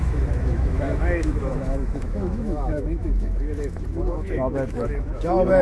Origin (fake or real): fake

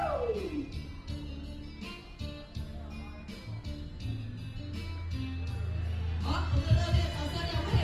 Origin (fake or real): real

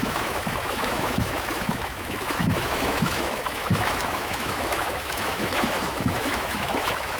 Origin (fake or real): fake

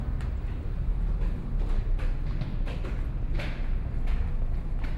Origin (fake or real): real